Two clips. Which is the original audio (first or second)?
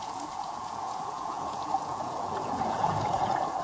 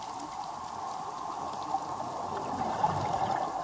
second